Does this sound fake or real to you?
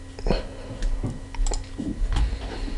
real